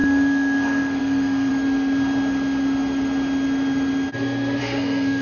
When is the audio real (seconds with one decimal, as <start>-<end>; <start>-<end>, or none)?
1.5-4.6